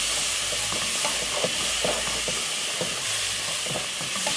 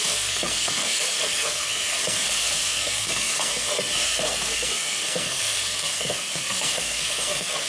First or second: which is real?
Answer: first